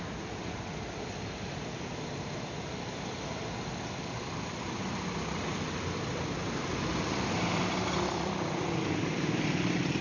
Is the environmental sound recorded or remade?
recorded